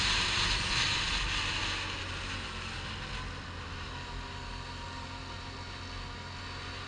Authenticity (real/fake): real